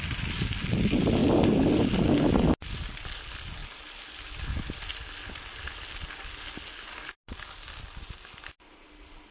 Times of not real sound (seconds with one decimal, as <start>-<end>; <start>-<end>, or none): none